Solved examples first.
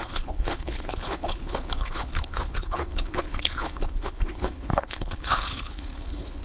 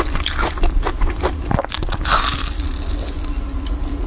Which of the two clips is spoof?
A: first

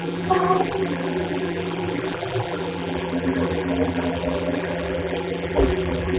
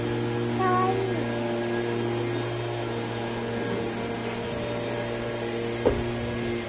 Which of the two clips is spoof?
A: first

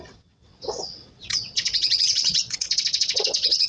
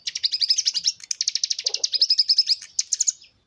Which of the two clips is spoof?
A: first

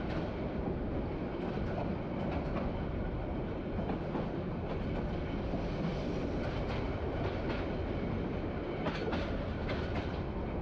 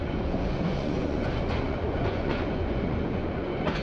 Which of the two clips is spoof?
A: second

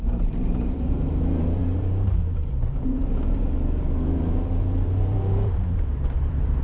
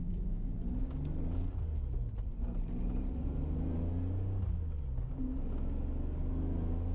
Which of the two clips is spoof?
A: first